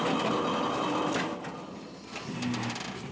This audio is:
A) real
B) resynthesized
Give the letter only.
A